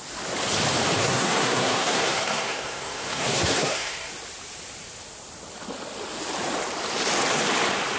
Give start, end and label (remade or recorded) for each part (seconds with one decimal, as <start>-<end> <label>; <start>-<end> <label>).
0.0-1.0 recorded; 1.0-4.1 remade; 4.1-8.0 recorded